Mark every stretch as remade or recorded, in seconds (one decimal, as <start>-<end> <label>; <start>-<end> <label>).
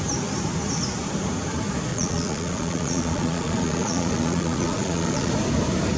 0.0-1.9 recorded; 1.9-5.3 remade; 5.3-6.0 recorded